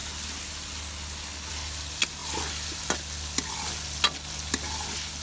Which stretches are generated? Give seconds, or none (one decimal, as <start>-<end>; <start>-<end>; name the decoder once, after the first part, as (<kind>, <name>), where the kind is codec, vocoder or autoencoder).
none